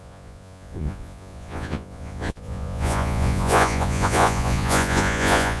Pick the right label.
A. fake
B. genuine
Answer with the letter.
A